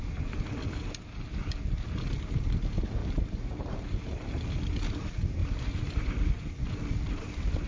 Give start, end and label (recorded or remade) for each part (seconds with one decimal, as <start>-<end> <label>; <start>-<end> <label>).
0.0-3.0 recorded; 3.0-4.3 remade; 4.3-5.4 recorded; 5.4-6.3 remade; 6.3-7.7 recorded